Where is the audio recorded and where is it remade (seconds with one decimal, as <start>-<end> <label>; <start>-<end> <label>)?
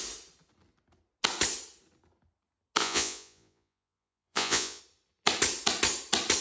0.0-2.8 recorded; 2.8-4.8 remade; 4.8-6.4 recorded